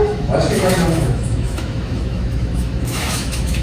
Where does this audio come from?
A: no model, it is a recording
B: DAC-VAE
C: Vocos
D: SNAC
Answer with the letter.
B